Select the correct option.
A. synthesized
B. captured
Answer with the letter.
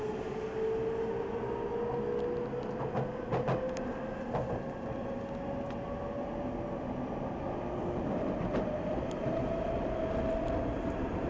B